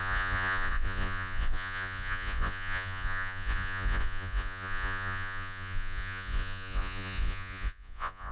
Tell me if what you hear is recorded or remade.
remade